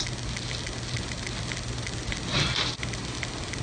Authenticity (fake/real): real